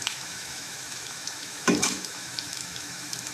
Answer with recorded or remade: remade